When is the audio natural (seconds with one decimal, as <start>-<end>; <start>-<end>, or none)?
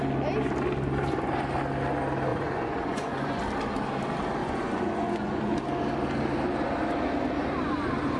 0.0-2.3; 3.4-4.4; 5.6-8.2